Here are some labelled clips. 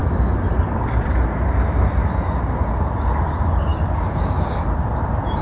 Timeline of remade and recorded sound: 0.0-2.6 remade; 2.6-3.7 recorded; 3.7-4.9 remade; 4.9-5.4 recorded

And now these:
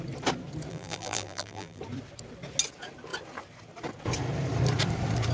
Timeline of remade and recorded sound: 0.0-0.7 recorded; 0.7-1.8 remade; 1.8-5.3 recorded

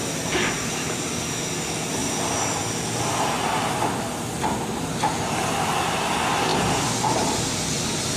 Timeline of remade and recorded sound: 0.0-8.2 recorded

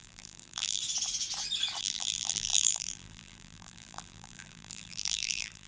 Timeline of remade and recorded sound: 0.0-0.8 remade; 0.8-1.8 recorded; 1.8-5.7 remade

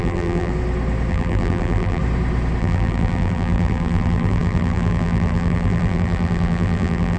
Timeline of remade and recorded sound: 0.0-0.5 remade; 0.5-1.1 recorded; 1.1-2.0 remade; 2.0-2.6 recorded; 2.6-7.2 remade